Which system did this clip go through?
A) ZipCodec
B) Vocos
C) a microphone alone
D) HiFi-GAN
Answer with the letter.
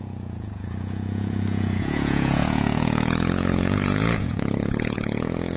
B